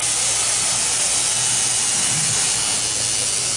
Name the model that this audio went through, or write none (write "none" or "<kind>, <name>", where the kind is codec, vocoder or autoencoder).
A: none